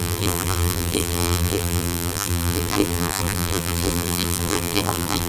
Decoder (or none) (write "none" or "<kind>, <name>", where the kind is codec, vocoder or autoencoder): vocoder, BigVGAN v2